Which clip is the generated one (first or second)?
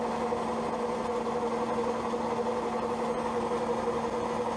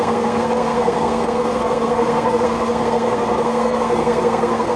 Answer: second